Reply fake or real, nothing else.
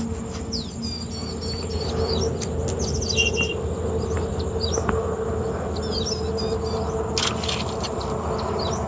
real